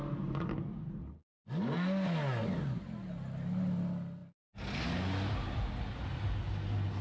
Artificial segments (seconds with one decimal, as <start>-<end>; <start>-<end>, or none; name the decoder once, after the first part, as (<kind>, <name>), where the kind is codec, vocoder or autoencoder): none